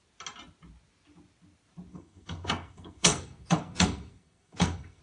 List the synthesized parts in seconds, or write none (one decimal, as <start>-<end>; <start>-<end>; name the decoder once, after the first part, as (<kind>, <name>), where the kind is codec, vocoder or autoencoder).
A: 1.9-5.0 (codec, SNAC)

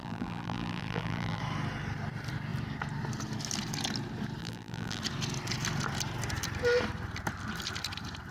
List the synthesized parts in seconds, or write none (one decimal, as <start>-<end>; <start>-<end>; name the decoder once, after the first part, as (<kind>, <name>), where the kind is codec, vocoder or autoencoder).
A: 0.0-1.4 (vocoder, BigVGAN v2); 4.4-5.0

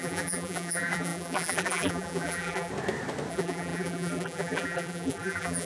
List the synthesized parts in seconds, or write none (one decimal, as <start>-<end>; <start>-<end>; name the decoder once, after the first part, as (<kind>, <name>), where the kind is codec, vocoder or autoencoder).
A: 0.0-2.7 (vocoder, BigVGAN v2); 3.3-5.7